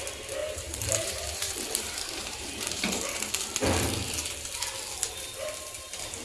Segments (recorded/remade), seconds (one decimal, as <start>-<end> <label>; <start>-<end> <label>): 0.0-0.4 recorded; 0.4-3.2 remade; 3.2-6.2 recorded